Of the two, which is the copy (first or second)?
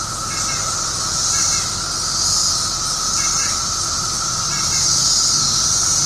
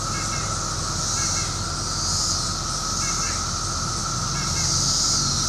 first